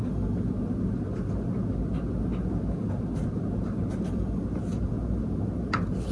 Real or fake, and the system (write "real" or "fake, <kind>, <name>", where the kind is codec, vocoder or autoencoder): real